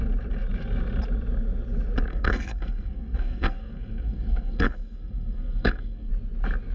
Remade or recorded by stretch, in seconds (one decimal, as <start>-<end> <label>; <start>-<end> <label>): 0.0-2.1 recorded; 2.1-6.1 remade; 6.1-6.7 recorded